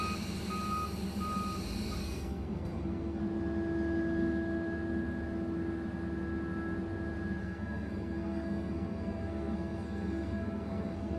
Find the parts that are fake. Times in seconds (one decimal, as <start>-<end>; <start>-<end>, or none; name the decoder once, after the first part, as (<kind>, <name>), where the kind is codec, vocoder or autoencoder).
2.0-3.2 (codec, SNAC); 7.4-11.2